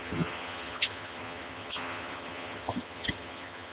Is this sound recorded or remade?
remade